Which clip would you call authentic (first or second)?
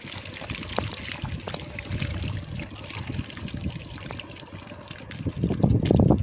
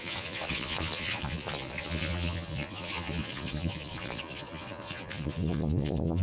first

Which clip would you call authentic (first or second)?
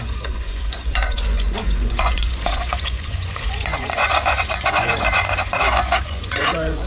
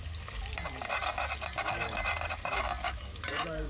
second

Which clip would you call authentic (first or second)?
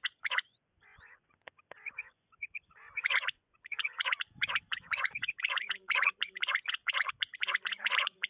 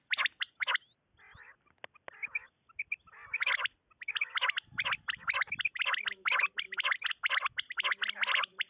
second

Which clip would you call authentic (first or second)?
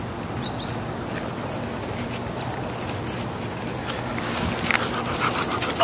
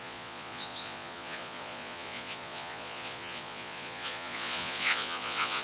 first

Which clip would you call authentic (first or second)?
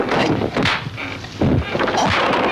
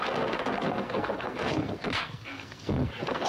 first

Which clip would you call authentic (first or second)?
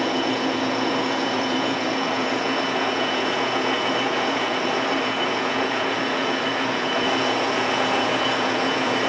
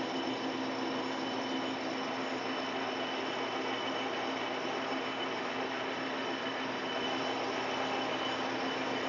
second